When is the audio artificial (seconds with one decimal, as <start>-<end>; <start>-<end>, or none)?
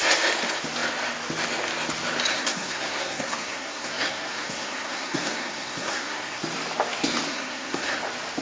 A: 2.3-6.4; 7.3-8.0